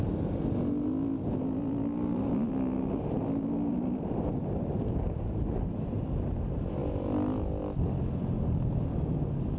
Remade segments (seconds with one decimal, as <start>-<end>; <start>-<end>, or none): none